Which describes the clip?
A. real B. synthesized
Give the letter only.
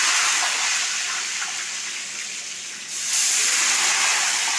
A